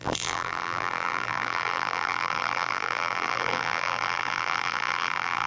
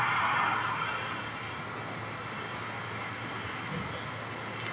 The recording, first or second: second